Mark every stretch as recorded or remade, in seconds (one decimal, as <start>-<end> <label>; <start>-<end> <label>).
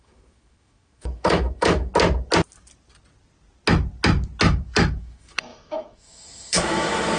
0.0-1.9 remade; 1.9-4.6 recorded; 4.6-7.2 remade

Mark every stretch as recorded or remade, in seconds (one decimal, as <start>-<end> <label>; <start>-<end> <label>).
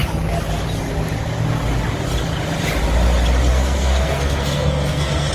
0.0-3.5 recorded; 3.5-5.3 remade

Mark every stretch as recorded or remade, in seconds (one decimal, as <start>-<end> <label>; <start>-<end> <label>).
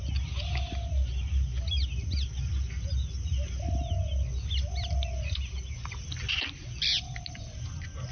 0.0-8.1 recorded